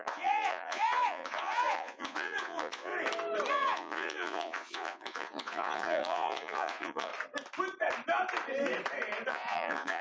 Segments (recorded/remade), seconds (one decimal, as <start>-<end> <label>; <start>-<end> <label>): 0.0-2.9 remade; 2.9-3.5 recorded; 3.5-7.1 remade; 7.1-9.3 recorded; 9.3-10.0 remade